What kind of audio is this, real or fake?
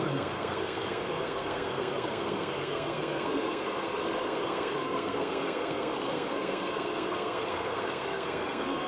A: fake